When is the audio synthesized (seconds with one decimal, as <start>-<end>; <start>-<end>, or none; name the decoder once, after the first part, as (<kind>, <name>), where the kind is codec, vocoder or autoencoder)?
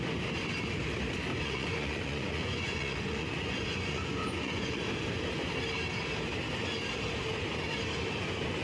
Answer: 1.3-4.8 (vocoder, Vocos)